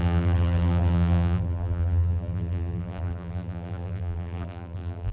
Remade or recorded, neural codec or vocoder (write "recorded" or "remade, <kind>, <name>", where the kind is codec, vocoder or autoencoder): remade, vocoder, BigVGAN v2